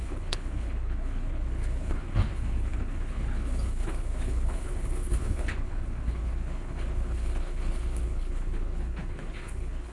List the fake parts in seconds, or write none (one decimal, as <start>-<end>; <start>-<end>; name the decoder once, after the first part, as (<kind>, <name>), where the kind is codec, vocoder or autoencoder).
0.0-9.9 (codec, HILCodec)